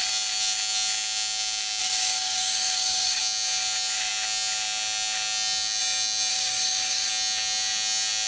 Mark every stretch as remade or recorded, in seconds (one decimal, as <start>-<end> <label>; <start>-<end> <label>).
0.0-1.8 recorded; 1.8-3.2 remade; 3.2-6.3 recorded; 6.3-7.1 remade; 7.1-8.3 recorded